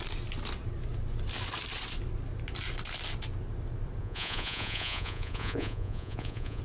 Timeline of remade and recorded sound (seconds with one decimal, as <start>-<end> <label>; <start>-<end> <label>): 0.0-4.0 recorded; 4.0-6.6 remade